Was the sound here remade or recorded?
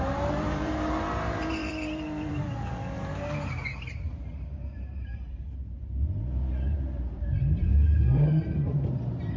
remade